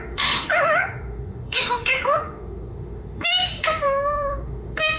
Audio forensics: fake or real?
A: fake